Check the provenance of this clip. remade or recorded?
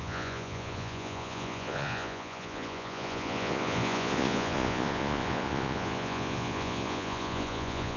remade